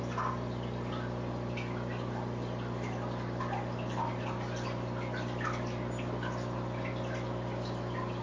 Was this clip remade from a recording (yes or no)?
no